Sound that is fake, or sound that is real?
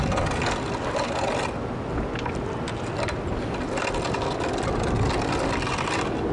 real